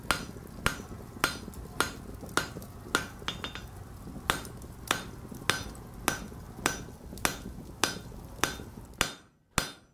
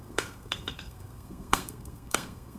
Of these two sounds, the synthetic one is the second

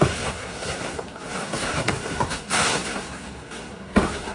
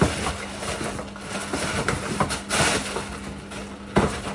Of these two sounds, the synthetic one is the first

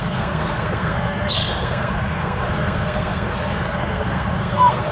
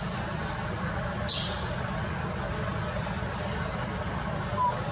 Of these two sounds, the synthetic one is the first